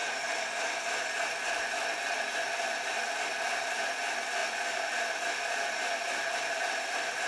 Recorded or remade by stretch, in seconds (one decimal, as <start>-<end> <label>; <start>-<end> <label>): 0.0-7.3 recorded